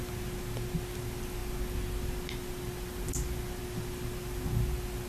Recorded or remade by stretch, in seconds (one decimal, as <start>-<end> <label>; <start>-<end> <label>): 0.0-5.1 recorded